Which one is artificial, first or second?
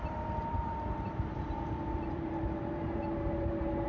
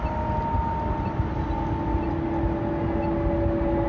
first